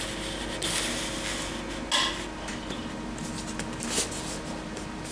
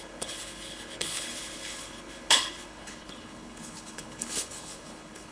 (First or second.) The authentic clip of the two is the first